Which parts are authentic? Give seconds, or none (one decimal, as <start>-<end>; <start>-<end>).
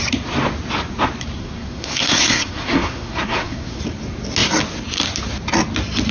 0.0-1.4; 3.8-6.1